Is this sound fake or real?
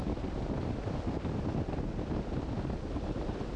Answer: real